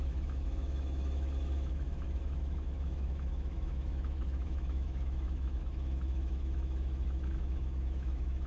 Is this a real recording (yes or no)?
no